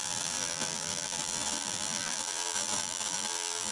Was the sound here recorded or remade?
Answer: remade